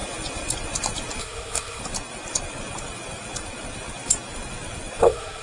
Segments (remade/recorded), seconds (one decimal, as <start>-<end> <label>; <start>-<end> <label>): 0.0-1.2 recorded; 1.2-1.8 remade; 1.8-5.0 recorded; 5.0-5.4 remade